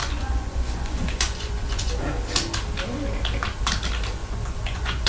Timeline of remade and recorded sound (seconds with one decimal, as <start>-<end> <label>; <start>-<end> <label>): 0.0-1.9 remade; 1.9-4.2 recorded; 4.2-5.1 remade